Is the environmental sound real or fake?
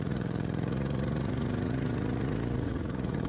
fake